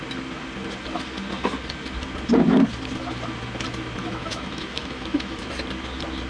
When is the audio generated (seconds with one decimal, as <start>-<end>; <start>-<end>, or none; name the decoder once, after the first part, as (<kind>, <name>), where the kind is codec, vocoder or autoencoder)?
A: 4.0-5.5 (autoencoder, DAC-VAE)